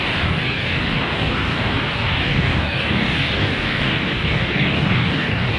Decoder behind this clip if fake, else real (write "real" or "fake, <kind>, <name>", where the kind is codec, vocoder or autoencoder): fake, codec, DAC